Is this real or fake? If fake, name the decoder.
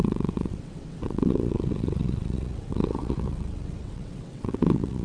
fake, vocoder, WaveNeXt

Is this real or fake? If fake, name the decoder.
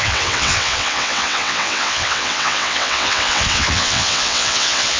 fake, vocoder, WaveNeXt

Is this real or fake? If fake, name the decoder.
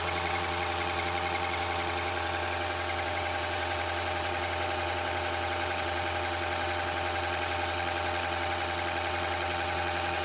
fake, vocoder, WaveNeXt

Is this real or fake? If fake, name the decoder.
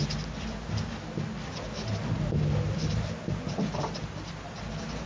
real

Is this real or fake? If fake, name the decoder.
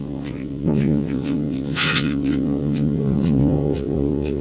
fake, vocoder, WaveNeXt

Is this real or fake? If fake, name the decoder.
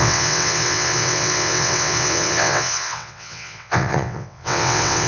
fake, vocoder, WaveNeXt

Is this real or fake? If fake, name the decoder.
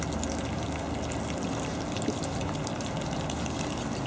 real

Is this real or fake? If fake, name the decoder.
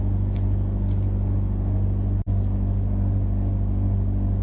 real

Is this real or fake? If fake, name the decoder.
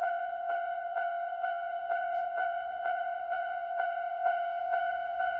fake, vocoder, WaveNeXt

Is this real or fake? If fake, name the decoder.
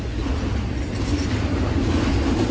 real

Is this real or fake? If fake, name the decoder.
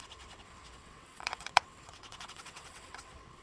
fake, vocoder, WaveNeXt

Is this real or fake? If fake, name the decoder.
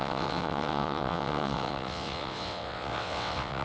fake, vocoder, WaveNeXt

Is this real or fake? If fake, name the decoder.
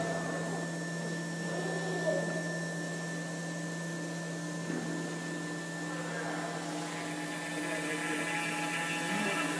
real